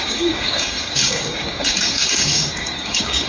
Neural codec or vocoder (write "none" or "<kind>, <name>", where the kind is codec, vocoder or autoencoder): codec, DAC